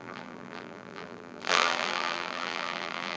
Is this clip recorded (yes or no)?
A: no